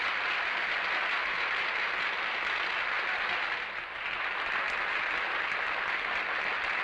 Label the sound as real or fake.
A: real